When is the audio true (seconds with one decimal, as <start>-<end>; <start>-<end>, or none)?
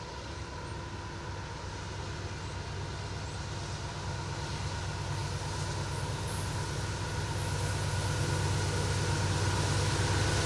0.0-10.5